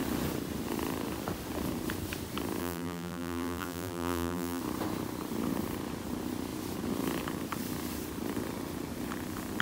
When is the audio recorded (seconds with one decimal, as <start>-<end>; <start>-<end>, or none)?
0.0-2.6; 4.6-9.6